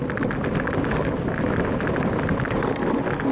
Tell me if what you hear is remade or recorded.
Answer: recorded